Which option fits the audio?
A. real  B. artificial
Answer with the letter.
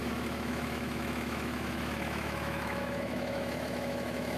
B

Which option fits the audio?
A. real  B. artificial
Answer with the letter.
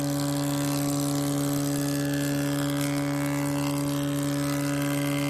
A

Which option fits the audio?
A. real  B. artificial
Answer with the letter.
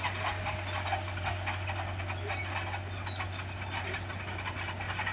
A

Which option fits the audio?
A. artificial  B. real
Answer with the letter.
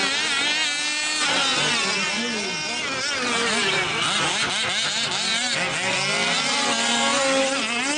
B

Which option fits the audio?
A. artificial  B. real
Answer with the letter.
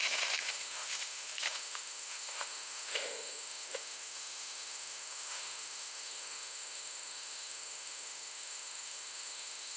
A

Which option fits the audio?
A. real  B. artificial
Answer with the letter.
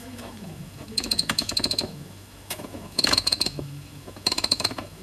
B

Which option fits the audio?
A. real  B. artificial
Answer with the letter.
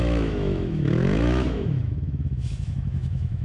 B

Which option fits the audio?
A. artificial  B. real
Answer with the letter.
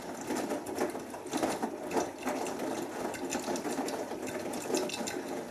B